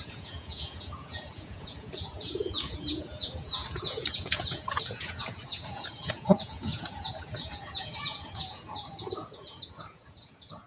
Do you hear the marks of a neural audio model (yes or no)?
yes